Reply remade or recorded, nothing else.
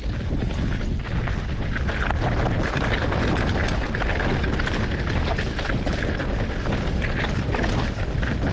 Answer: recorded